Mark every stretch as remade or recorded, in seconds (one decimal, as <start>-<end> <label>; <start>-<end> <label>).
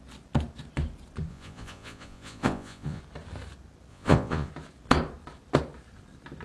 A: 0.0-1.3 recorded; 1.3-3.0 remade; 3.0-3.9 recorded; 3.9-4.5 remade; 4.5-6.4 recorded